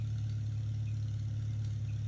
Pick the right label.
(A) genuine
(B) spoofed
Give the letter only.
A